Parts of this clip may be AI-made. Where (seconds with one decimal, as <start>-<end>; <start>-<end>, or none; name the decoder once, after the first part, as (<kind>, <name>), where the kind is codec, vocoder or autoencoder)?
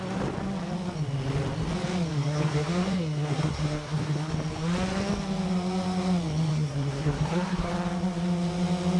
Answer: 2.1-4.3 (codec, SNAC); 6.5-7.7